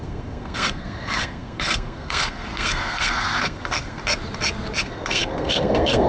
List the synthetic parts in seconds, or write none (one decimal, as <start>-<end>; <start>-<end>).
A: 0.0-4.0; 4.8-6.1